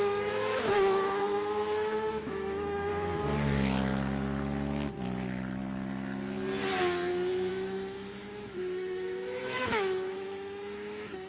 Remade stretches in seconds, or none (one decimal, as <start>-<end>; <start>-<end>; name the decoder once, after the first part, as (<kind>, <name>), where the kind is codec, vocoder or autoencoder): 0.0-2.9 (autoencoder, DAC-VAE); 7.5-11.3